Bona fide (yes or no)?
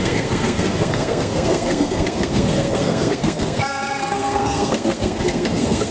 no